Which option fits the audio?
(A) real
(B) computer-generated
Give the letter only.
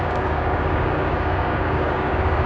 B